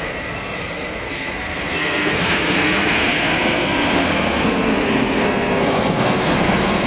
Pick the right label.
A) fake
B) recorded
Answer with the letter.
A